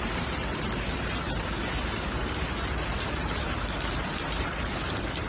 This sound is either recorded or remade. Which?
remade